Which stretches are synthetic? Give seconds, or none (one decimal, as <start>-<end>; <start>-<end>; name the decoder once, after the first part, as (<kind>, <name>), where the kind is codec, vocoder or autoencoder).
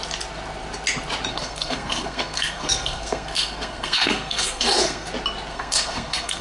1.3-5.1 (codec, SNAC); 5.5-6.4